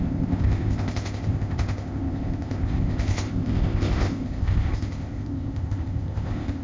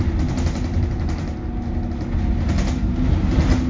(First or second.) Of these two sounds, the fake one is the first